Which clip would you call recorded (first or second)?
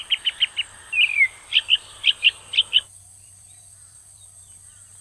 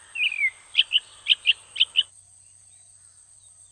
second